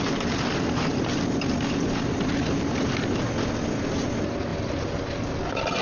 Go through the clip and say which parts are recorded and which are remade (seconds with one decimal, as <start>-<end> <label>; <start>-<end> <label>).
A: 0.0-5.8 recorded